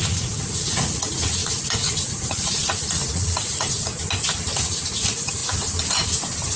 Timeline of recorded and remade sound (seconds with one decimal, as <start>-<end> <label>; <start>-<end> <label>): 0.0-3.9 remade; 3.9-4.7 recorded; 4.7-5.4 remade; 5.4-6.6 recorded